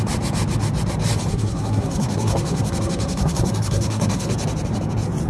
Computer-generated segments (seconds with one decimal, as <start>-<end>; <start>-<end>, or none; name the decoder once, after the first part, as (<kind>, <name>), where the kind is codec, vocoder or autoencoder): 1.3-4.3 (codec, SNAC)